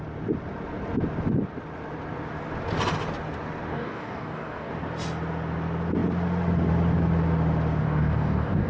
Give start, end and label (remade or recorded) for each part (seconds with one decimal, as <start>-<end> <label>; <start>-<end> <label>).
0.0-3.7 recorded; 3.7-4.7 remade; 4.7-7.8 recorded; 7.8-8.7 remade